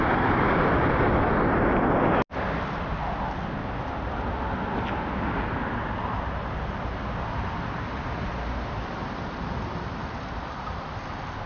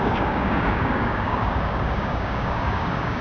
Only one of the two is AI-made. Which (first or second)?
second